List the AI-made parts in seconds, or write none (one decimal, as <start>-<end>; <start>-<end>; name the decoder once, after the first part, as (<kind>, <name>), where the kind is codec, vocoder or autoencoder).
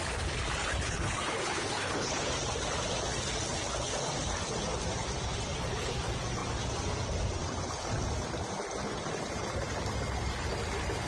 0.7-2.3 (codec, HILCodec)